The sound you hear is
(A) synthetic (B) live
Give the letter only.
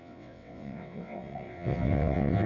A